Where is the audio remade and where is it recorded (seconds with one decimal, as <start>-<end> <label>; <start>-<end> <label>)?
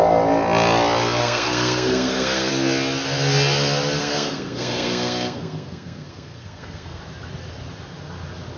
0.0-1.2 recorded; 1.2-2.5 remade; 2.5-4.0 recorded; 4.0-7.0 remade; 7.0-8.6 recorded